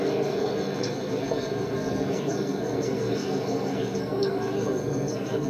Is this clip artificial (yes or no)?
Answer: yes